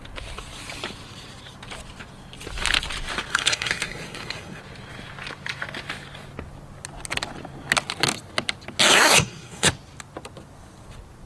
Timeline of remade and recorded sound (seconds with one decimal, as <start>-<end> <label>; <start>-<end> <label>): 0.0-3.3 recorded; 3.3-4.6 remade; 4.6-8.9 recorded; 8.9-9.7 remade; 9.7-11.3 recorded